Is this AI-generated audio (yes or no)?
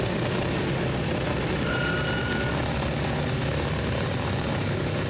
no